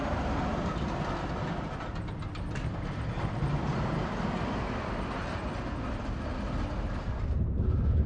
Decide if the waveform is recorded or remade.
recorded